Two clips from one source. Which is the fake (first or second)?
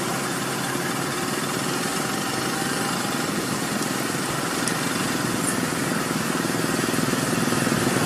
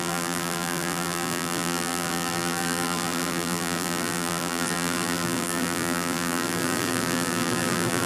second